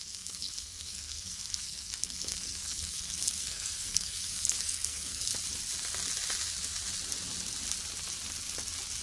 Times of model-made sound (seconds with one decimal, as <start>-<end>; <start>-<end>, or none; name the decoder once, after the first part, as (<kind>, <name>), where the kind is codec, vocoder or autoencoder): 0.0-5.3 (codec, SNAC)